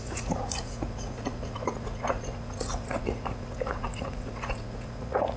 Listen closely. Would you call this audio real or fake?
fake